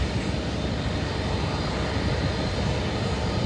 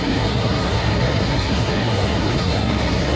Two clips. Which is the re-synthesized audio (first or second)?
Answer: second